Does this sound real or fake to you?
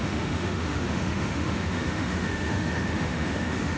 fake